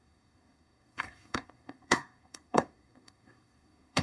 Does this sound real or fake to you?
fake